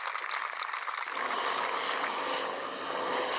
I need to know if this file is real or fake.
real